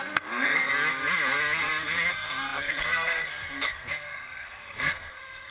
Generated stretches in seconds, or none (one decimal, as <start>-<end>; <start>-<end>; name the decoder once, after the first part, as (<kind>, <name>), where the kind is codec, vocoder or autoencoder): 0.0-0.7 (codec, SNAC); 2.1-5.5